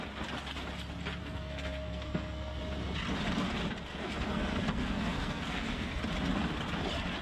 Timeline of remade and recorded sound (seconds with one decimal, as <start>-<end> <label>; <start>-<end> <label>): 0.0-1.2 recorded; 1.2-2.6 remade; 2.6-3.9 recorded; 3.9-6.0 remade; 6.0-7.2 recorded